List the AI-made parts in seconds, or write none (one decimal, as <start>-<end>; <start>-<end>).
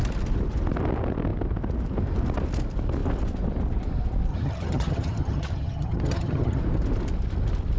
4.3-6.6